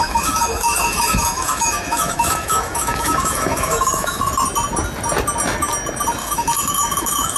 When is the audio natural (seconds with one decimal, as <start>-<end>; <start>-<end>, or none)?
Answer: 4.2-6.2